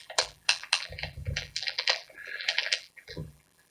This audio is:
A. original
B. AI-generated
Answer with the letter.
B